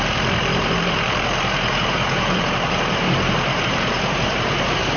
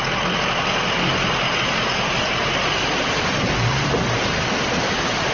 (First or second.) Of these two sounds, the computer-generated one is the first